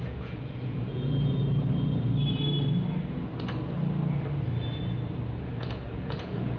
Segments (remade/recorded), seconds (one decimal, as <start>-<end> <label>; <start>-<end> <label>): 0.0-1.4 remade; 1.4-5.4 recorded; 5.4-6.6 remade